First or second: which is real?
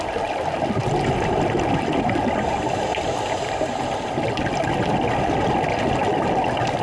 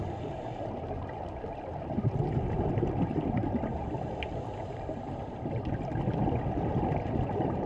first